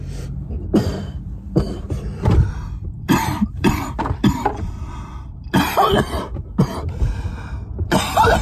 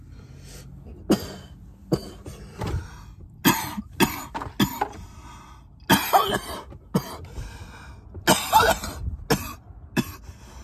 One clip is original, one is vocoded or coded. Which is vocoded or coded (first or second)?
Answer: first